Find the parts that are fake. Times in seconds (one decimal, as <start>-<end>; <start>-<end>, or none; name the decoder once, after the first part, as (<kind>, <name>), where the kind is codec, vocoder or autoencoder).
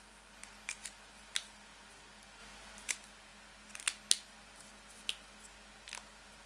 none